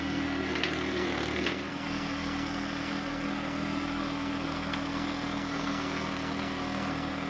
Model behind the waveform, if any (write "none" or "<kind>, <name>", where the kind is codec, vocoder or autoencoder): codec, SNAC